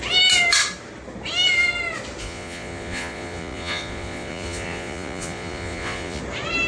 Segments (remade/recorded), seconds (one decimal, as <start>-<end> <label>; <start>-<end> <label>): 0.0-2.2 recorded; 2.2-6.2 remade; 6.2-6.7 recorded